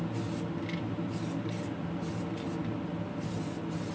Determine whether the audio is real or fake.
real